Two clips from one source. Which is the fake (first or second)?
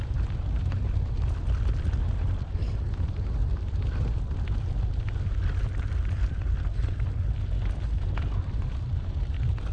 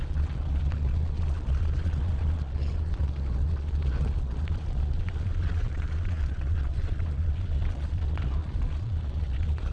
second